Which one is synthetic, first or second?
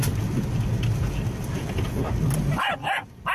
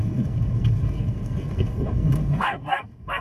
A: second